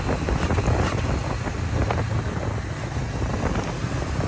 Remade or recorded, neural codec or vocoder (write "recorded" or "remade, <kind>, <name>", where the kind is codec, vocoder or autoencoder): recorded